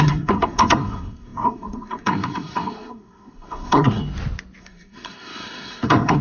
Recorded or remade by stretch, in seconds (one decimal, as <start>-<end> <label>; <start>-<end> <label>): 0.0-4.0 remade; 4.0-4.6 recorded; 4.6-6.2 remade